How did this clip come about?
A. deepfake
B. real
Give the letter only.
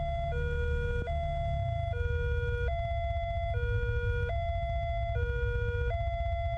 B